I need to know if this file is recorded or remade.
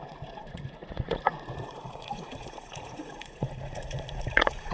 remade